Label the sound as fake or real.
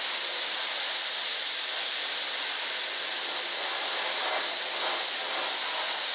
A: real